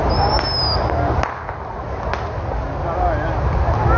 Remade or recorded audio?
recorded